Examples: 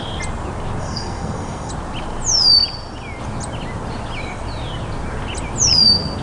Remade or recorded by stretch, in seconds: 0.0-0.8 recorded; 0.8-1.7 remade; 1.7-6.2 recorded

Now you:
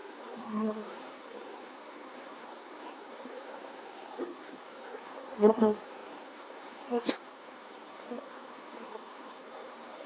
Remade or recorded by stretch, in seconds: 0.0-10.1 remade